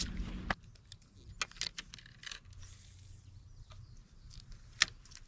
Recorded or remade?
recorded